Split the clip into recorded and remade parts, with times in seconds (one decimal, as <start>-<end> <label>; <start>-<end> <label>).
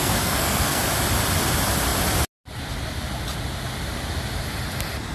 0.0-0.8 remade; 0.8-5.1 recorded